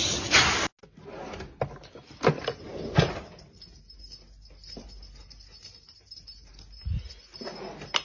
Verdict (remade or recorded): recorded